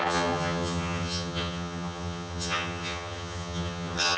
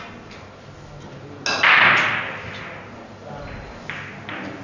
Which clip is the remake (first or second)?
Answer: first